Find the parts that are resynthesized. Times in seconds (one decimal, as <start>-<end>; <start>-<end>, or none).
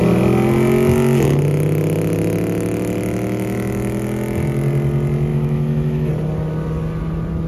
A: 5.3-6.1